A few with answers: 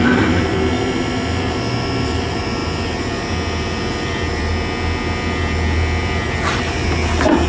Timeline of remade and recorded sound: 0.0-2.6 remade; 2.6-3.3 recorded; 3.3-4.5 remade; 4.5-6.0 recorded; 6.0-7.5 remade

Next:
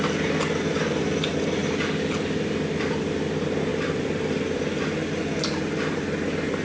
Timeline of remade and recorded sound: 0.0-6.6 recorded

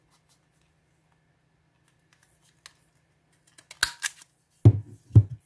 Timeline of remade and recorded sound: 0.0-5.5 recorded

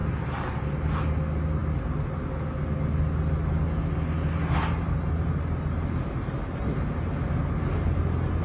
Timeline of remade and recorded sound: 0.0-1.0 remade; 1.0-8.4 recorded

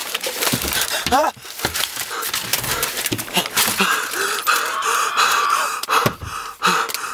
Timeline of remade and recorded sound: 0.0-1.3 remade; 1.3-2.5 recorded; 2.5-3.4 remade; 3.4-4.7 recorded; 4.7-6.0 remade; 6.0-7.1 recorded